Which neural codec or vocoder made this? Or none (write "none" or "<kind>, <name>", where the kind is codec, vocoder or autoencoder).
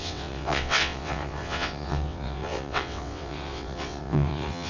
vocoder, WaveNeXt